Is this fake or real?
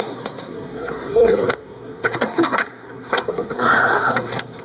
fake